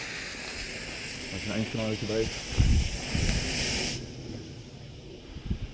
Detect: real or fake real